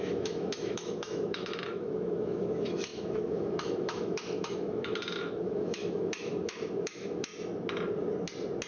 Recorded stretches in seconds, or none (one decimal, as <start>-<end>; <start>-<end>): 7.3-8.7

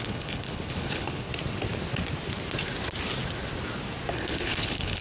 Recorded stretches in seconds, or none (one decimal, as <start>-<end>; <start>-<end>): 1.3-4.1

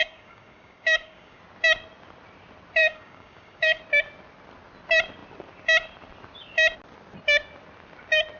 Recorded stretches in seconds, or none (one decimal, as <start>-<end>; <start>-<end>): 1.4-2.8; 3.8-8.4

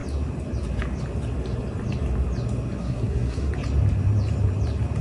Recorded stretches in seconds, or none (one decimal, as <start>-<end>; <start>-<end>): 0.0-2.8; 3.5-5.0

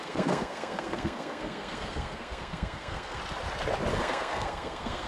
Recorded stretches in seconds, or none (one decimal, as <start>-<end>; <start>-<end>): 3.2-3.9

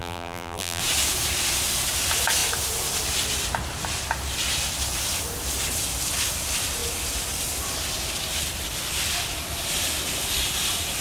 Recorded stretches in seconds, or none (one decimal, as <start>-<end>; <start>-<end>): 0.8-11.0